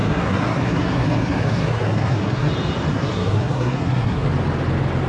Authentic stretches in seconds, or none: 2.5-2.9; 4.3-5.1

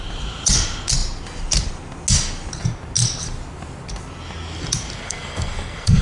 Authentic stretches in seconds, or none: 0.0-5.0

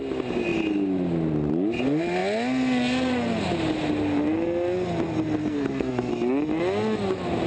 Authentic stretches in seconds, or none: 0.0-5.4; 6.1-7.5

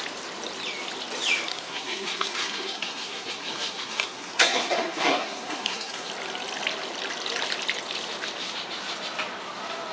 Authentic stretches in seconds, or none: 0.0-1.5; 6.1-9.9

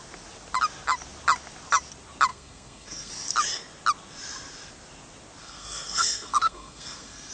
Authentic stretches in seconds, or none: 0.0-2.3; 3.1-5.4

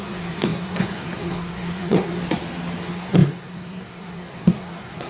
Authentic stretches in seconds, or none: 2.2-2.8